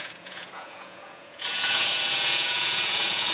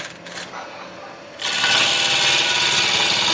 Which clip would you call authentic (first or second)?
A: second